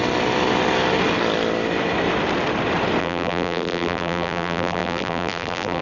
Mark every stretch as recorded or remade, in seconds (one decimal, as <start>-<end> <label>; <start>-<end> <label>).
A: 0.0-3.0 recorded; 3.0-5.8 remade